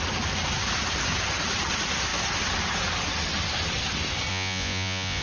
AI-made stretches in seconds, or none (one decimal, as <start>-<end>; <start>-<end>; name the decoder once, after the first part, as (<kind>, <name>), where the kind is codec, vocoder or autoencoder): 4.3-5.2 (vocoder, Vocos)